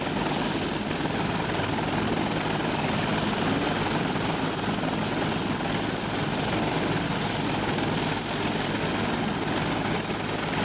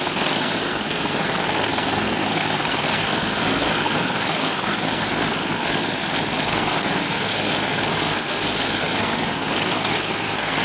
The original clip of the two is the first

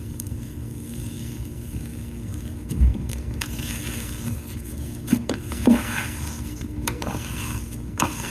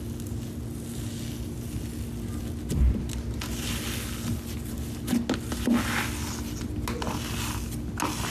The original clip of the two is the second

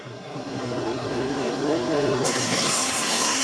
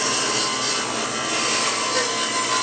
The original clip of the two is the second